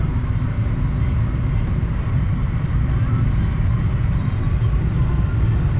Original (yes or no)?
yes